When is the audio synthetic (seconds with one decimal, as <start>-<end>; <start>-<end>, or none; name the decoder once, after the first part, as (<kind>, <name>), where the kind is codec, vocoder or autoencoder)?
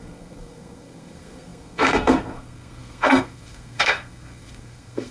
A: 0.0-5.1 (codec, SNAC)